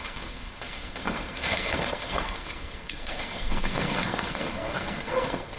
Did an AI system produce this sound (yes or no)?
yes